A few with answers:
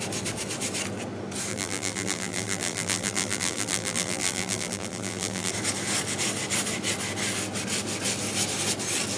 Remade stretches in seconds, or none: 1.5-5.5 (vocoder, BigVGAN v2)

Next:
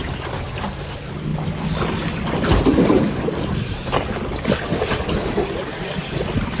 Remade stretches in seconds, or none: none

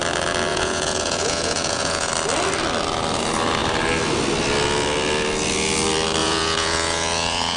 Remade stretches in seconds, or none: 0.5-2.1 (vocoder, Vocos); 6.2-7.6

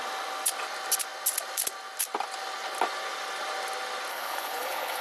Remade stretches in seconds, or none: 4.1-5.0 (codec, HILCodec)

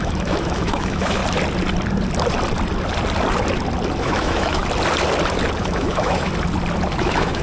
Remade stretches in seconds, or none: 0.0-1.2 (autoencoder, DAC-VAE); 4.0-4.6; 5.6-6.3; 7.0-7.4

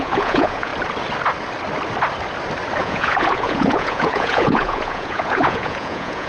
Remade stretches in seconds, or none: 0.0-0.7 (vocoder, Vocos); 2.8-6.3

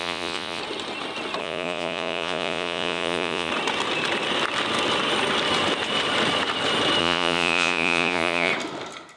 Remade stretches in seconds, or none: 0.0-0.6 (vocoder, Vocos); 1.4-3.5; 7.0-8.5

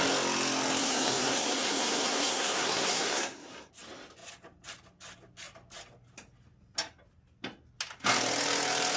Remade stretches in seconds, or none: 0.8-3.7 (codec, SNAC)